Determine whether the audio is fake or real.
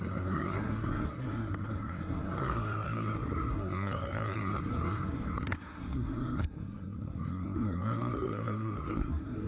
fake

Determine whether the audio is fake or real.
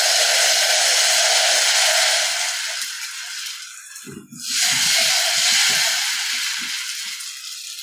real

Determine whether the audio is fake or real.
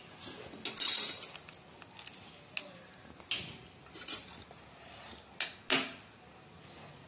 real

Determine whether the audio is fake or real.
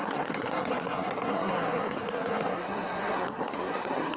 fake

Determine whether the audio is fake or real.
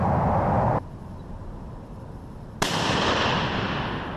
real